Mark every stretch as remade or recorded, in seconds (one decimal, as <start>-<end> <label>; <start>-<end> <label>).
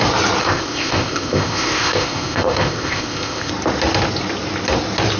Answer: 0.0-0.4 recorded; 0.4-3.5 remade; 3.5-5.2 recorded